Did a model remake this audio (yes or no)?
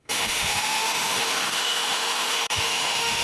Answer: yes